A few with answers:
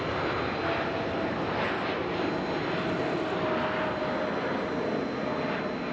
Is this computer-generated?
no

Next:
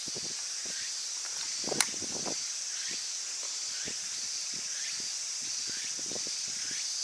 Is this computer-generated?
no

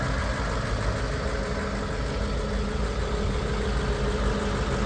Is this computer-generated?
no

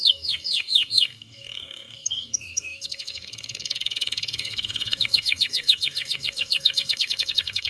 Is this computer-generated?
yes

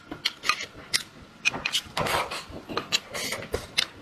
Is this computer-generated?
no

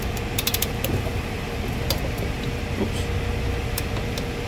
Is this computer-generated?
no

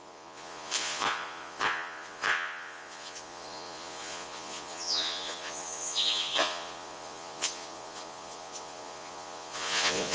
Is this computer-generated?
yes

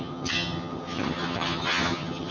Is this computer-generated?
yes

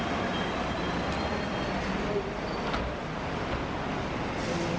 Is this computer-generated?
no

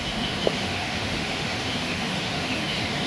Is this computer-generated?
yes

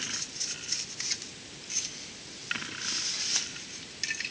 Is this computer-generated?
no